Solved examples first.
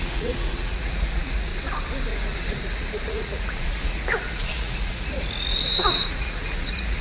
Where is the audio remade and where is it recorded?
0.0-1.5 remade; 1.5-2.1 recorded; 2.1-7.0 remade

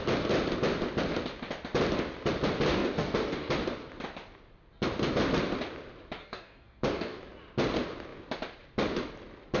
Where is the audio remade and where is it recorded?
0.0-2.7 recorded; 2.7-3.5 remade; 3.5-6.2 recorded; 6.2-7.2 remade; 7.2-9.6 recorded

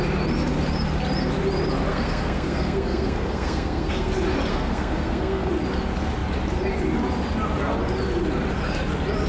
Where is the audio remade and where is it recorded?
0.0-1.9 recorded; 1.9-4.1 remade; 4.1-4.5 recorded; 4.5-5.5 remade; 5.5-9.3 recorded

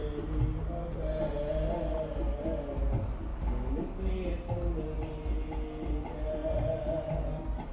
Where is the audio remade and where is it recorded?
0.0-3.3 recorded; 3.3-4.1 remade; 4.1-7.7 recorded

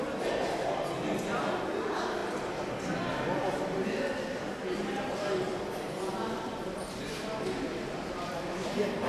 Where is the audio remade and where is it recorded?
0.0-5.5 recorded; 5.5-6.1 remade; 6.1-6.5 recorded; 6.5-9.1 remade

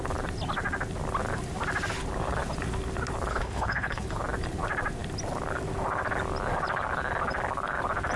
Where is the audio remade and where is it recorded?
0.0-3.3 recorded; 3.3-4.2 remade; 4.2-8.2 recorded

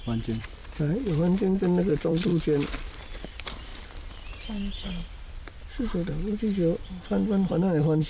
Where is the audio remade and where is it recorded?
0.0-0.6 remade; 0.6-1.6 recorded; 1.6-3.7 remade; 3.7-7.5 recorded; 7.5-8.1 remade